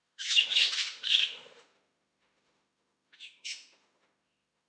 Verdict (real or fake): fake